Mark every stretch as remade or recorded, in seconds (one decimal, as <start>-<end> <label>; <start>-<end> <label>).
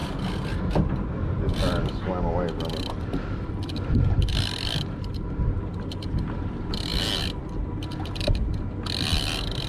0.0-4.3 remade; 4.3-9.7 recorded